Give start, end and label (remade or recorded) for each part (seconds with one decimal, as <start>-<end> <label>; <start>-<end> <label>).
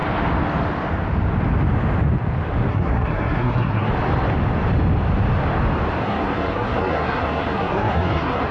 0.0-2.7 recorded; 2.7-3.9 remade; 3.9-6.0 recorded; 6.0-8.5 remade